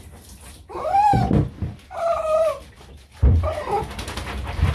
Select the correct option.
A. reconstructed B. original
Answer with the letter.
B